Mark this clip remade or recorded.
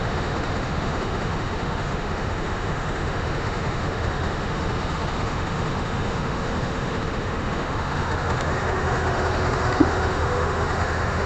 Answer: remade